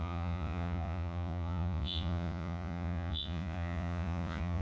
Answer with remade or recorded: remade